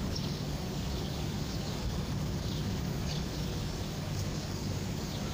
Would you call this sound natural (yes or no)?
no